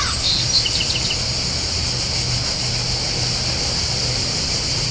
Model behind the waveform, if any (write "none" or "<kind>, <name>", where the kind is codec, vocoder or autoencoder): none